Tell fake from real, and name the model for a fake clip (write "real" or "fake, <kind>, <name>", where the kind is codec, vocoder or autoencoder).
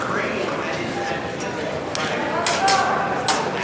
real